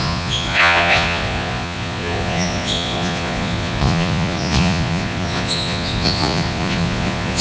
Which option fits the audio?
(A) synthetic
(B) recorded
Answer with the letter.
A